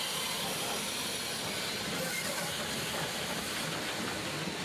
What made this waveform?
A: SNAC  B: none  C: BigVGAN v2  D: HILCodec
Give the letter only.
B